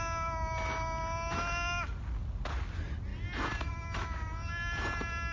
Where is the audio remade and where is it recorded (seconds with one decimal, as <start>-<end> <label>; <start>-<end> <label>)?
0.0-5.3 recorded